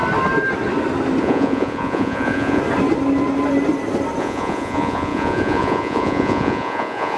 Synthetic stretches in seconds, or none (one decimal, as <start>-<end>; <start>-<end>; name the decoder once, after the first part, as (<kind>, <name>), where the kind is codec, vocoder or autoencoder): 1.2-2.6 (vocoder, Vocos); 4.2-7.2